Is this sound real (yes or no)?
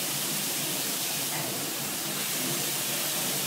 no